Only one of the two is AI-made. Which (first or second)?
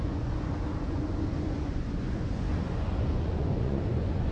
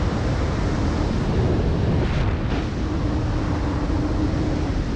first